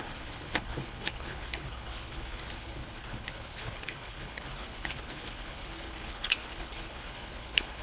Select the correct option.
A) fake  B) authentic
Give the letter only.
A